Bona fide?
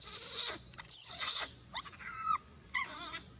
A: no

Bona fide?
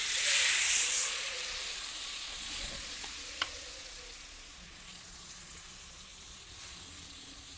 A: no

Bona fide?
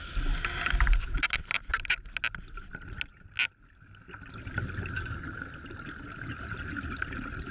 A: yes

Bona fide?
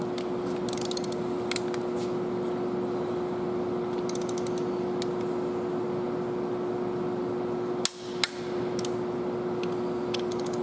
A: yes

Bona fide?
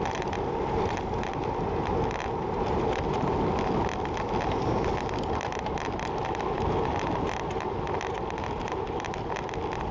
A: yes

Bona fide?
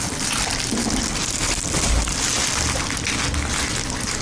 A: yes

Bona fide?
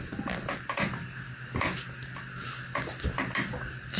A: yes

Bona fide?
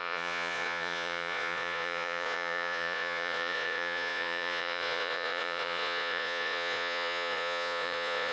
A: no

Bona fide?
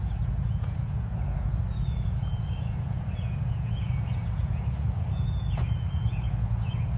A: no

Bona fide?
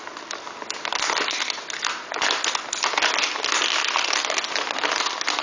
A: yes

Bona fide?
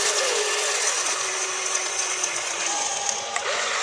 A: no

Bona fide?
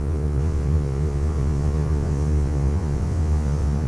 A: no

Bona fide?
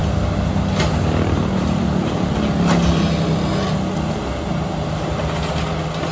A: yes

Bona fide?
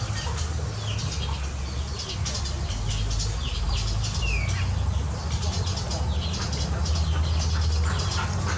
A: yes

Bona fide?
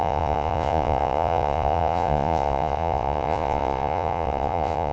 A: no